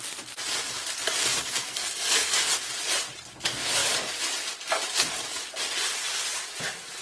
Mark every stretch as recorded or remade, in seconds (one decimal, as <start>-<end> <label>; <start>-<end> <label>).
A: 0.0-1.4 recorded; 1.4-2.5 remade; 2.5-7.0 recorded